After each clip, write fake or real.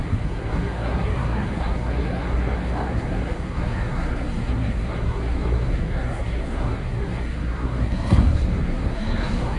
fake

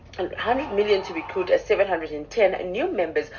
real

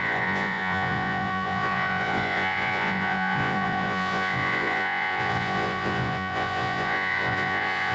fake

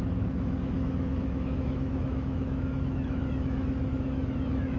fake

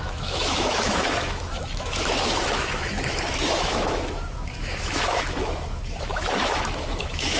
fake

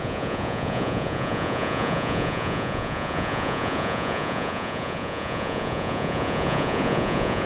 fake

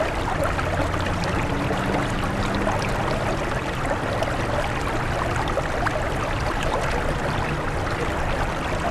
real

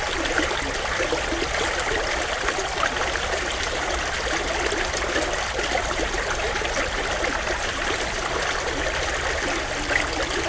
real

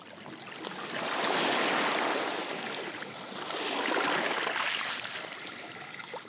real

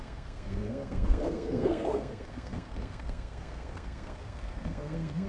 fake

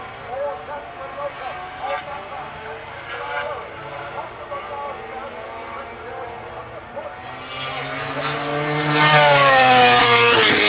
real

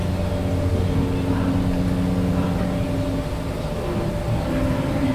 real